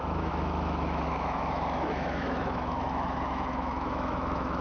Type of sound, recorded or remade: remade